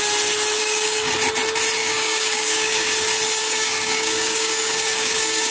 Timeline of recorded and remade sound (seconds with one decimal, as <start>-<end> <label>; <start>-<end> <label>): 0.0-0.6 recorded; 0.6-1.1 remade; 1.1-1.8 recorded; 1.8-2.9 remade; 2.9-3.4 recorded; 3.4-5.5 remade